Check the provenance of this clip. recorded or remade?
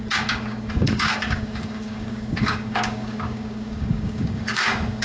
remade